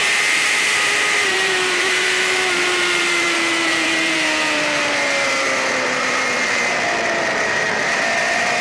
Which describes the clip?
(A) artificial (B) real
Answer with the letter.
A